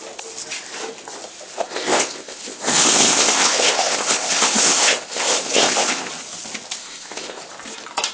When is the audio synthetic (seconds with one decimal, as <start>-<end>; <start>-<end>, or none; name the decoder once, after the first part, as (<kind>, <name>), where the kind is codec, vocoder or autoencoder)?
1.6-6.1 (codec, ZipCodec); 6.8-7.4